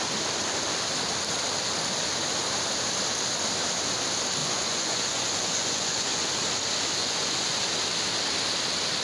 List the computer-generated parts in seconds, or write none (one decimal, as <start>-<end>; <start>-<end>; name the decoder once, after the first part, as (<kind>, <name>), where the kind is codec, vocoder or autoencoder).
4.4-6.3 (vocoder, Vocos); 7.0-7.6